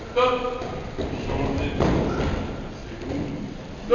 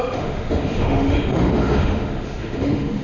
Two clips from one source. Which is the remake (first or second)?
second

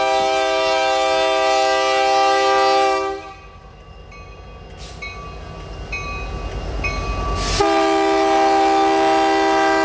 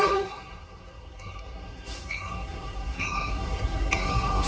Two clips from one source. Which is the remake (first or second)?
second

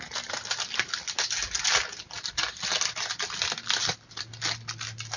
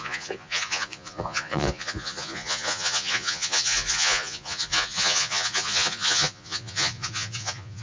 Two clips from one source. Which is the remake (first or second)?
second